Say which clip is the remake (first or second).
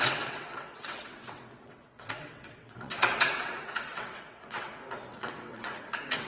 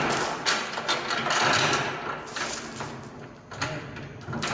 first